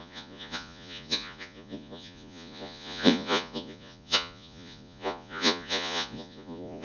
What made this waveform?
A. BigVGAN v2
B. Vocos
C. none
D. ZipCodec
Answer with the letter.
B